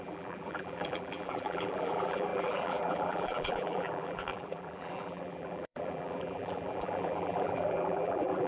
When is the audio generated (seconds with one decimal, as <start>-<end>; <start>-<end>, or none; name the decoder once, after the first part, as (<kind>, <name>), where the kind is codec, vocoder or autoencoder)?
0.0-8.5 (vocoder, BigVGAN v2)